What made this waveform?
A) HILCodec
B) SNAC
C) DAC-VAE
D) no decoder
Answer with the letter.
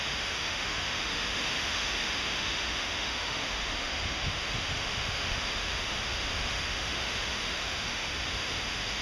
C